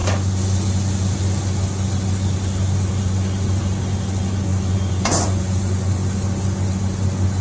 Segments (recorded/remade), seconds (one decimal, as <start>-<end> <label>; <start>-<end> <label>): 0.0-4.5 recorded; 4.5-6.0 remade; 6.0-7.4 recorded